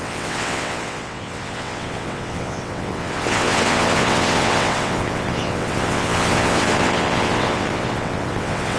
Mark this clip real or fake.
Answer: fake